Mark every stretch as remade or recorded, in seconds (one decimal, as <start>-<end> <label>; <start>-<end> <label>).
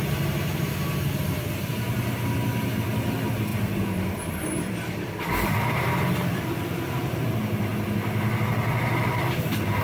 0.0-3.5 recorded; 3.5-6.4 remade; 6.4-9.8 recorded